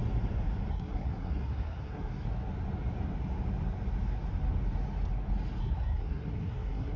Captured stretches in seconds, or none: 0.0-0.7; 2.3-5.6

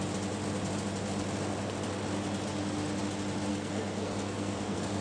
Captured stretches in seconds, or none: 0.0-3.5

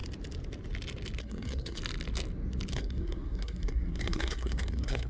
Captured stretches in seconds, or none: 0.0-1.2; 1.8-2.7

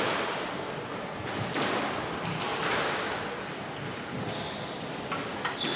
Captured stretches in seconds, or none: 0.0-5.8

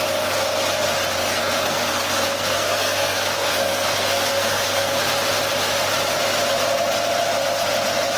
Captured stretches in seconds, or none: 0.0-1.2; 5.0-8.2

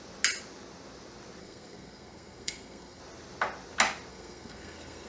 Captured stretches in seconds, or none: 0.0-1.4; 3.0-4.1

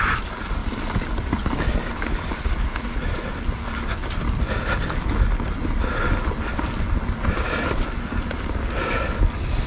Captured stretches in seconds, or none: 0.0-9.7